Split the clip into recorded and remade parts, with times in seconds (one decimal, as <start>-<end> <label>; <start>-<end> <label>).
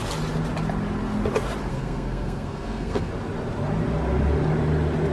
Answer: 0.0-1.7 recorded; 1.7-3.1 remade; 3.1-5.1 recorded